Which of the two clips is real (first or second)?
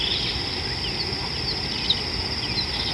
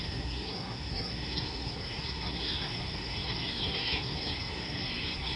first